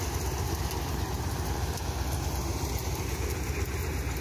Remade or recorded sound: recorded